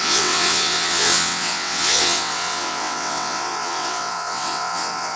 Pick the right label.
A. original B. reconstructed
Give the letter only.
B